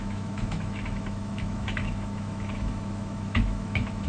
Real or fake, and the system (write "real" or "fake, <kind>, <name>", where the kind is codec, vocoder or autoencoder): fake, autoencoder, DAC-VAE